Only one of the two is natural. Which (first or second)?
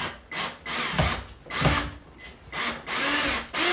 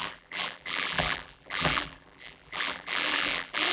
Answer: first